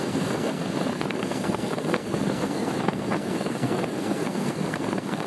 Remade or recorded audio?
remade